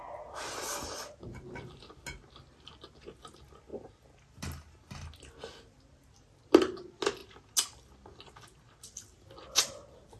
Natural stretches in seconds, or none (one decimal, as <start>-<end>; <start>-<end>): 0.0-10.2